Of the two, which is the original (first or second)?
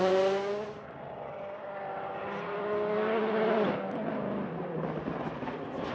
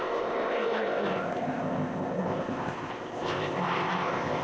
first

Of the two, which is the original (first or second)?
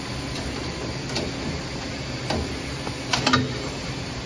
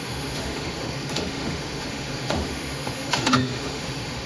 first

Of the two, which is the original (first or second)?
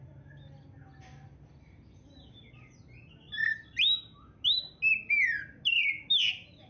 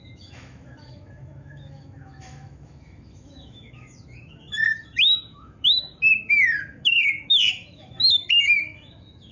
first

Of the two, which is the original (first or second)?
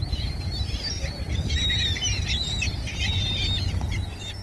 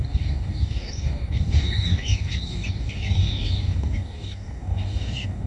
first